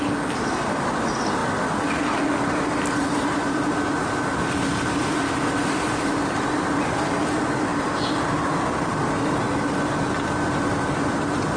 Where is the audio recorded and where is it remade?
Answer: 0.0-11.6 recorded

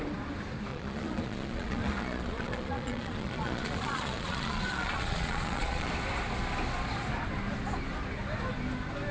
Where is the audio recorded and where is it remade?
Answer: 0.0-0.7 recorded; 0.7-5.9 remade; 5.9-9.1 recorded

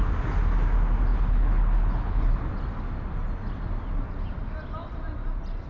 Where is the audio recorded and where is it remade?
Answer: 0.0-1.1 recorded; 1.1-2.5 remade; 2.5-5.7 recorded

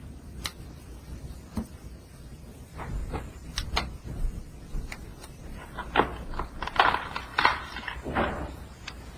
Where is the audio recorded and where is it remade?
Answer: 0.0-3.0 recorded; 3.0-4.4 remade; 4.4-5.1 recorded; 5.1-5.8 remade; 5.8-7.3 recorded; 7.3-8.3 remade; 8.3-9.2 recorded